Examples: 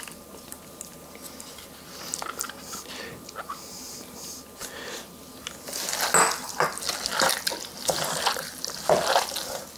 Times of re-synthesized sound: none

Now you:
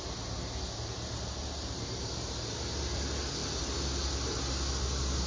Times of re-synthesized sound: none

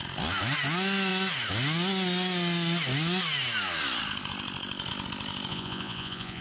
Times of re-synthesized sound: 5.5-6.4 (vocoder, Vocos)

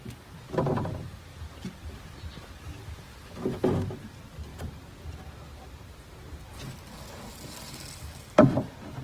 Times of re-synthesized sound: none

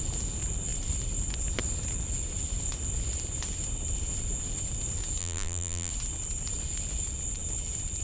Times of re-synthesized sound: 5.2-5.9 (vocoder, BigVGAN v2)

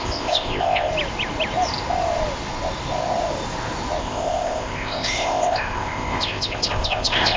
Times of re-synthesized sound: 0.0-0.9 (codec, ZipCodec); 4.0-7.4

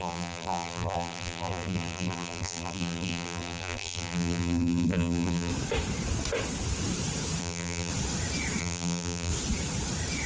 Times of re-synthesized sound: 0.0-5.5 (vocoder, BigVGAN v2); 7.4-7.9; 8.6-9.3

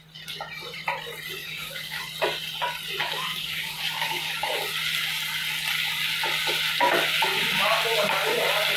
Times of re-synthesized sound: 1.4-2.0 (codec, DAC); 3.0-4.6